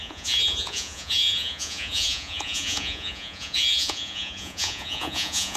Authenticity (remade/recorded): remade